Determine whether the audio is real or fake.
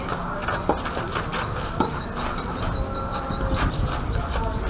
real